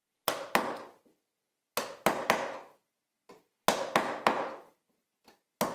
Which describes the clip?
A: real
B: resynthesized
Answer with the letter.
A